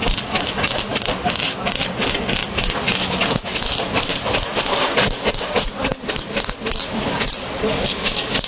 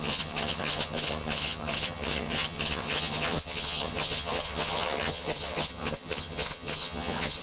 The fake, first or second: second